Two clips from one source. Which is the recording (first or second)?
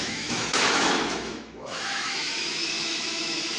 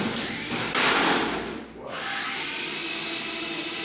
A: second